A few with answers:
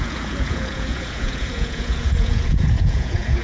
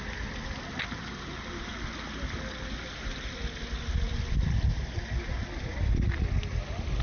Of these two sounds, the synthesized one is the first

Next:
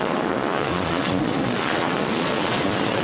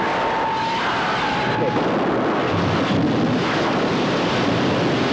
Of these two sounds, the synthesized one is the first